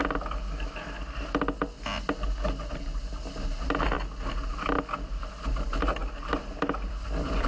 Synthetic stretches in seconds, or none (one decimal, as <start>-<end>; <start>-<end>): 4.5-6.0; 6.9-7.5